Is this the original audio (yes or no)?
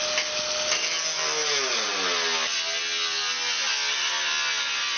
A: yes